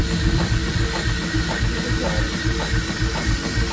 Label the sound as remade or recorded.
recorded